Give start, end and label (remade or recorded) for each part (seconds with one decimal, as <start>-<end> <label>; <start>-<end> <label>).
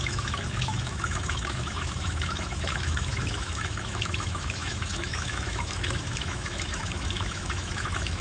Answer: 0.0-8.2 remade